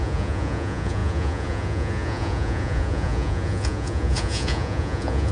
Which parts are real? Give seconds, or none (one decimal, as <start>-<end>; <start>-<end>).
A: none